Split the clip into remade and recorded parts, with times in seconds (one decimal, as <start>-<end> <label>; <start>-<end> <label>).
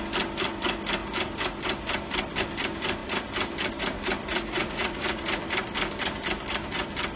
0.0-4.3 recorded; 4.3-5.2 remade; 5.2-7.2 recorded